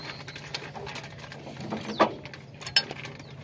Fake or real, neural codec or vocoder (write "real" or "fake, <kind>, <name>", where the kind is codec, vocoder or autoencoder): real